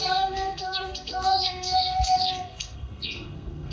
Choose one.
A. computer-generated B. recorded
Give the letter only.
A